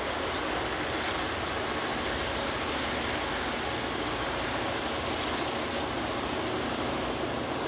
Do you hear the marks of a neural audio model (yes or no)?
no